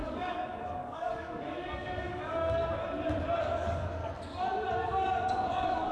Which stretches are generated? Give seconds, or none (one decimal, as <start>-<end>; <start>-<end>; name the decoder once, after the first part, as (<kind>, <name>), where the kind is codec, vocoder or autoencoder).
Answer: 0.0-2.6 (codec, DAC); 3.4-4.0; 4.7-5.9